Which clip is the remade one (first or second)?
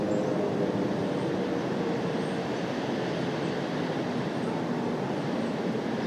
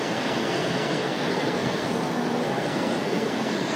second